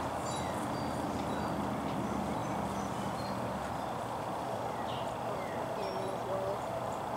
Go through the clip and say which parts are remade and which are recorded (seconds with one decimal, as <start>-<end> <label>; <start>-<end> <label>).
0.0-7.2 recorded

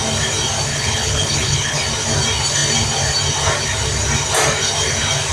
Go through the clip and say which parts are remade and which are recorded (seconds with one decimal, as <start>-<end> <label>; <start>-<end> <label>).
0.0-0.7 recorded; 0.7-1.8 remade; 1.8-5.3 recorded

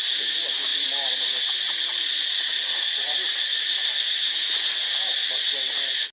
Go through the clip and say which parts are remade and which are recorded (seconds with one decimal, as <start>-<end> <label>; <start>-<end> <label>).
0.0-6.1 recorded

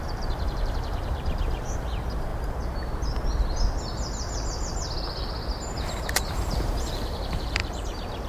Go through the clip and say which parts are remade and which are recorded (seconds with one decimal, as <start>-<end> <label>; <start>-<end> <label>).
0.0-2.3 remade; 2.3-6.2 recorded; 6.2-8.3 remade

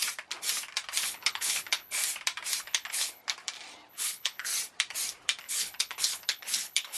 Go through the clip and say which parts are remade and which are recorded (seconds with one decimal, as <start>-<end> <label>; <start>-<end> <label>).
0.0-1.0 recorded; 1.0-2.0 remade; 2.0-2.6 recorded; 2.6-3.2 remade; 3.2-3.9 recorded; 3.9-4.5 remade; 4.5-5.4 recorded; 5.4-7.0 remade

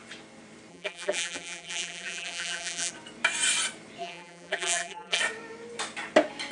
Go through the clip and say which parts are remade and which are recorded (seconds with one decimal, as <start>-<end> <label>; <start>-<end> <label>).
0.0-0.7 recorded; 0.7-2.9 remade; 2.9-4.0 recorded; 4.0-5.2 remade; 5.2-6.5 recorded